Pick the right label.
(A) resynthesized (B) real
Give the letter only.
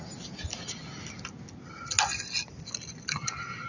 B